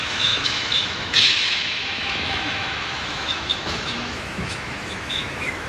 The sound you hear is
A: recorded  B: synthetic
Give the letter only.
B